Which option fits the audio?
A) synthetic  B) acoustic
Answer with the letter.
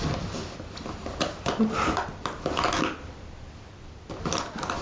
B